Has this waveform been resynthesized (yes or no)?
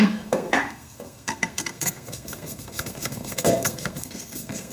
yes